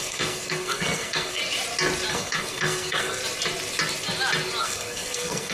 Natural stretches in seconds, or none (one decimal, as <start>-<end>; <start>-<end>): 1.4-2.1; 3.2-4.6